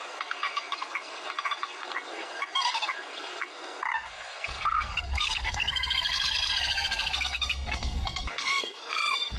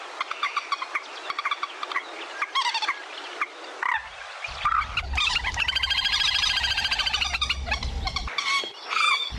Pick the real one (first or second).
second